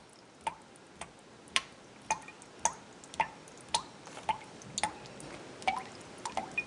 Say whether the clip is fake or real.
real